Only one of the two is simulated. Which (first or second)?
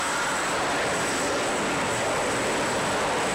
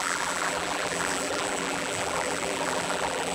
second